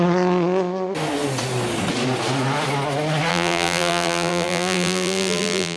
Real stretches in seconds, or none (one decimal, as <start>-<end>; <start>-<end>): 0.0-3.3